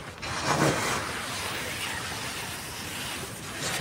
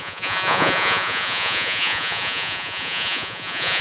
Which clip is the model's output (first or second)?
second